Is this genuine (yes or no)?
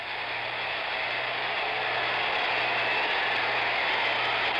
yes